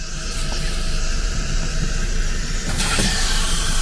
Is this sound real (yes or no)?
no